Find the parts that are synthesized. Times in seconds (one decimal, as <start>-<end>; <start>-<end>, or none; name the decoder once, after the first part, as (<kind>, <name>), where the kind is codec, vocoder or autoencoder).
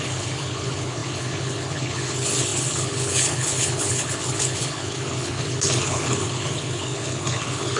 0.0-7.8 (codec, HILCodec)